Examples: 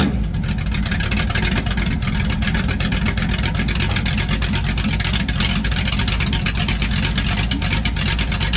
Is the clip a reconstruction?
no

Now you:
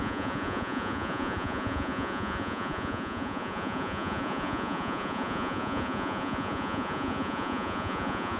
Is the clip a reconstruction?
yes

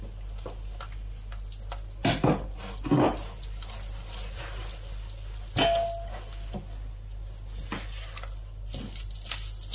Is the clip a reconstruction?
no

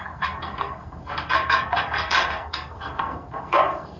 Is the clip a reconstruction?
yes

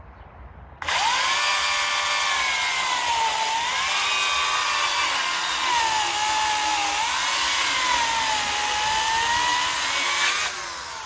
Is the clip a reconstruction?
no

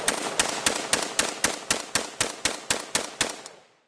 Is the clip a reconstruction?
no